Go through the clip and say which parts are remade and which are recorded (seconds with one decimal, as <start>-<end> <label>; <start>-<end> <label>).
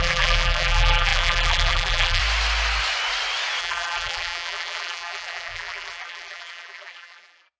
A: 0.0-2.2 remade; 2.2-3.6 recorded; 3.6-7.6 remade